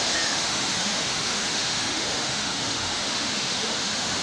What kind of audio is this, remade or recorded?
remade